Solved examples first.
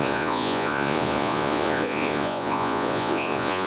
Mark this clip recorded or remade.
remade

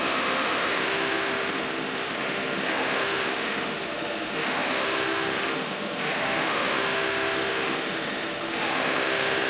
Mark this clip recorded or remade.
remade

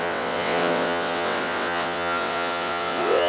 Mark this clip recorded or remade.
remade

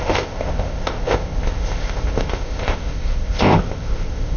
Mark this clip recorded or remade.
remade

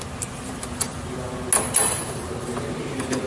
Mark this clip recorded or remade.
recorded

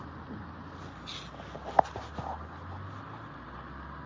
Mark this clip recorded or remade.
recorded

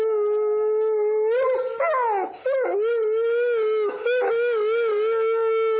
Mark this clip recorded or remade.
recorded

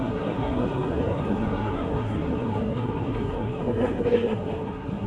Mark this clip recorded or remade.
remade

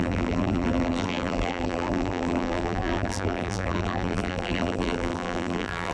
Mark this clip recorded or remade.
remade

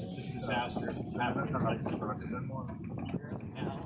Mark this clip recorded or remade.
recorded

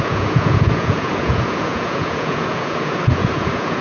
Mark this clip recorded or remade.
remade